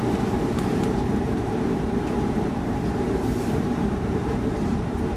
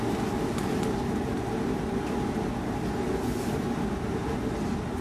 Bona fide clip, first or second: second